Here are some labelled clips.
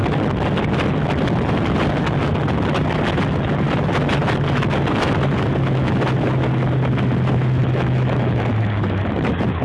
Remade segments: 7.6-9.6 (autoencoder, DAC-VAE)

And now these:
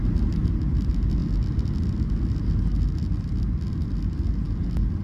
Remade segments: none

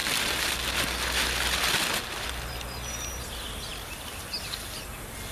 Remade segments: none

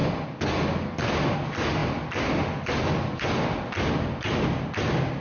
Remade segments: none

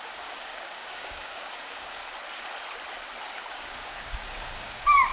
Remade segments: 0.0-2.0 (codec, DAC); 3.5-5.1

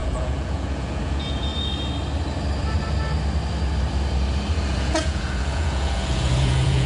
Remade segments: 0.0-1.5 (vocoder, Vocos); 4.7-6.9

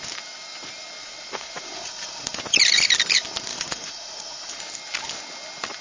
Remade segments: 1.0-2.4 (vocoder, Vocos); 3.5-4.6